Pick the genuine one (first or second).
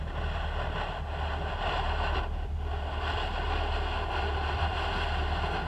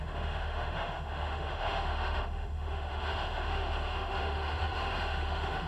first